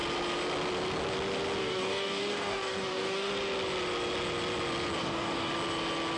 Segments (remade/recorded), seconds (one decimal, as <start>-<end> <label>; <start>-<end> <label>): 0.0-1.6 recorded; 1.6-3.3 remade; 3.3-5.0 recorded; 5.0-5.5 remade; 5.5-6.2 recorded